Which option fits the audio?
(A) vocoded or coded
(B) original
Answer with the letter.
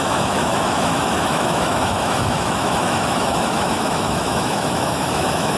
A